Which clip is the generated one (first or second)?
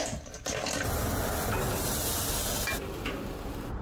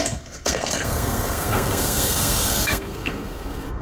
second